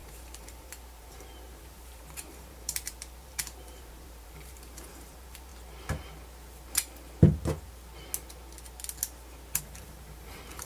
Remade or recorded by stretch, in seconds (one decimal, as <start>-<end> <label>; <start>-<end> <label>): 0.0-5.5 remade; 5.5-9.6 recorded; 9.6-10.7 remade